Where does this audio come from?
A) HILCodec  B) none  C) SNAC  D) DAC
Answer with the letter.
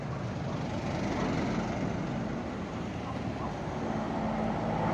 B